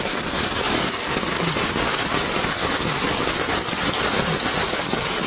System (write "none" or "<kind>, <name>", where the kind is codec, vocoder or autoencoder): none